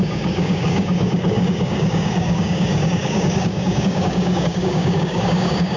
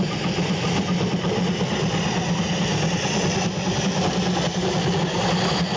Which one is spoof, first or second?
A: first